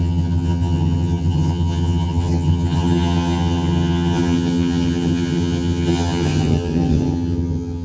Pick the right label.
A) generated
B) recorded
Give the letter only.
A